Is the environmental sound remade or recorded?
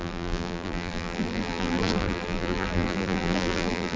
remade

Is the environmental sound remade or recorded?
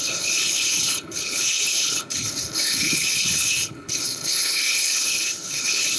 remade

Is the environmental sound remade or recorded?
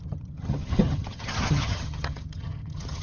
remade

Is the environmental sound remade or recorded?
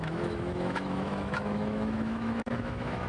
remade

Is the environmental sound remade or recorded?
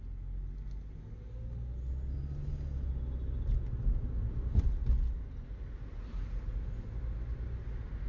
recorded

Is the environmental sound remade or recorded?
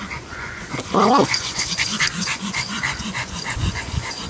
remade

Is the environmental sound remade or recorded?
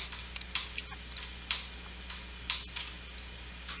recorded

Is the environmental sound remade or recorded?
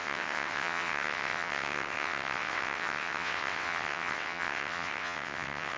remade